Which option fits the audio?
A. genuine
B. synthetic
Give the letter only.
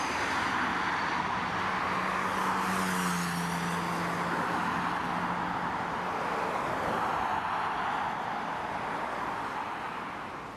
A